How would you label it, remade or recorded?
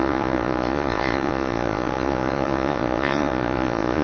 remade